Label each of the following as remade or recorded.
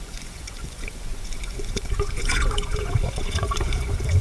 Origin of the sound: remade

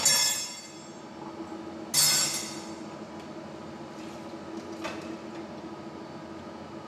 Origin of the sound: recorded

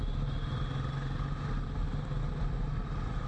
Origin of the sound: recorded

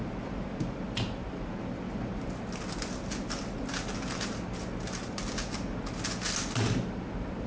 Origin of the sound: recorded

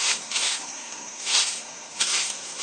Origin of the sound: remade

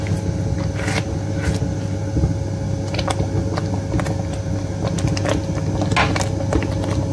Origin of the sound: recorded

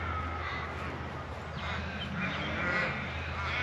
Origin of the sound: recorded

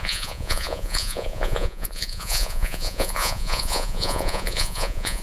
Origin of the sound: remade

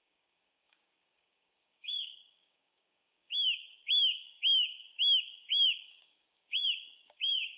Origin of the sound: remade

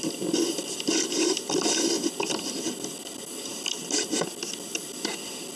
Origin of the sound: recorded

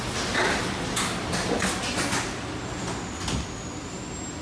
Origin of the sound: recorded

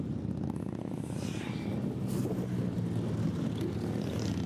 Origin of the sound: recorded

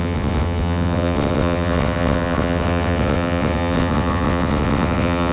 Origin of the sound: remade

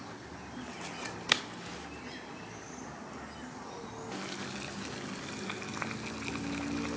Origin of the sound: recorded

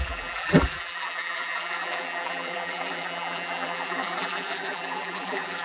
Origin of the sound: remade